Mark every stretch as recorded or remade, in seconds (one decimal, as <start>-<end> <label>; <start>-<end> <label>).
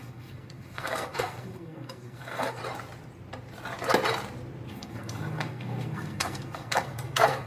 0.0-2.6 remade; 2.6-4.7 recorded; 4.7-7.5 remade